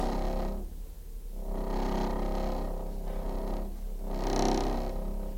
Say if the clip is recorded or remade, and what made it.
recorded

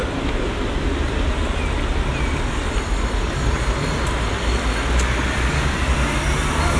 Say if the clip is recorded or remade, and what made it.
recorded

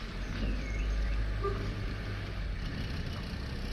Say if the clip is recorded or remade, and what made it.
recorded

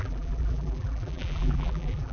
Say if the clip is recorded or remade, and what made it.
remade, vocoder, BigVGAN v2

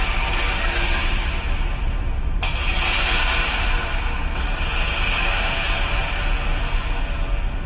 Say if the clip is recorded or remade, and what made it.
recorded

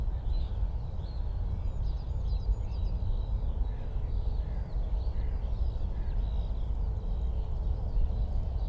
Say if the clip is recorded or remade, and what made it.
recorded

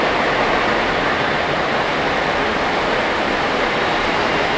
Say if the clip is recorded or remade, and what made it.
remade, vocoder, BigVGAN v2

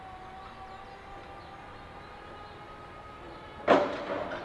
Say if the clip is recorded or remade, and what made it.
recorded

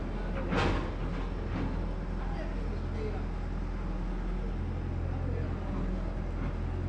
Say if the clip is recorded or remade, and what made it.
recorded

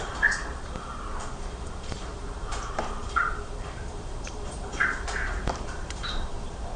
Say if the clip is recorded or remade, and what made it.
remade, vocoder, BigVGAN v2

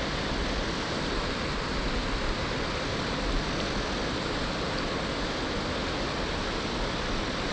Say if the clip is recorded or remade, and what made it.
recorded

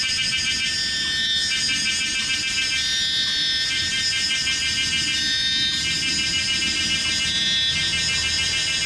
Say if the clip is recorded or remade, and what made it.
remade, vocoder, BigVGAN v2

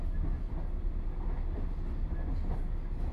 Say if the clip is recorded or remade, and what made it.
recorded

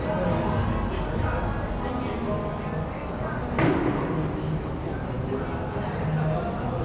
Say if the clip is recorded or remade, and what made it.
recorded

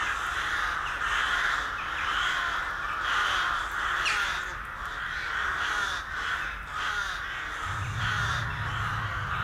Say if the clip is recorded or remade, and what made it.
recorded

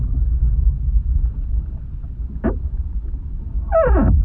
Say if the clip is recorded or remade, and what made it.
remade, vocoder, BigVGAN v2